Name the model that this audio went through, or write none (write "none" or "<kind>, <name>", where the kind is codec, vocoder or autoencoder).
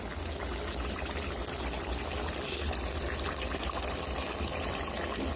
none